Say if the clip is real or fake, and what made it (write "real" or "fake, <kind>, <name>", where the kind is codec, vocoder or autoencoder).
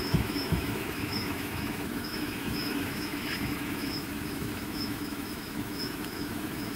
fake, autoencoder, DAC-VAE